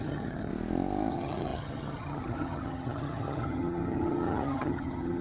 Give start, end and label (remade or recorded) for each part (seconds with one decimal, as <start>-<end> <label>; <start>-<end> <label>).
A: 0.0-0.5 remade; 0.5-1.1 recorded; 1.1-5.2 remade